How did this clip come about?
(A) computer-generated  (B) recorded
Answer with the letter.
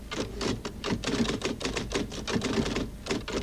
B